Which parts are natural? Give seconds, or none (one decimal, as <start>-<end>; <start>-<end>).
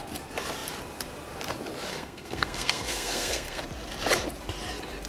0.0-1.9; 3.6-5.1